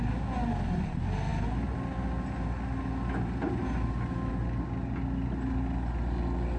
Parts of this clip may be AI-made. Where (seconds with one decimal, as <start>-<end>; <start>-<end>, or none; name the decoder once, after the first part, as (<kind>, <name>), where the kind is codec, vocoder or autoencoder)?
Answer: none